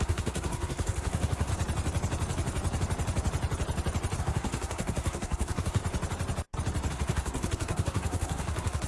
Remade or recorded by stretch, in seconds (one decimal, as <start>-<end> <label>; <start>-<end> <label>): 0.0-1.5 remade; 1.5-4.2 recorded; 4.2-5.8 remade; 5.8-6.9 recorded; 6.9-8.9 remade